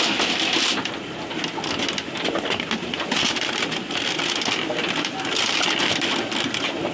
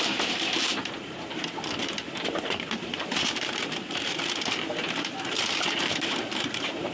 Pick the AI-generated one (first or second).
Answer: second